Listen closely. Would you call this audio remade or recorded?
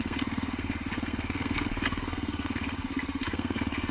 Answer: remade